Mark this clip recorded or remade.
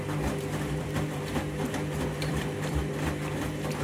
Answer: remade